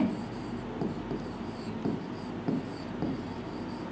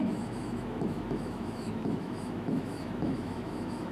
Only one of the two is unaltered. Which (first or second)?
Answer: first